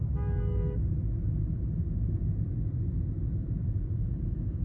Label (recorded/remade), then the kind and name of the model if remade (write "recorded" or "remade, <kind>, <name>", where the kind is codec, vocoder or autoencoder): recorded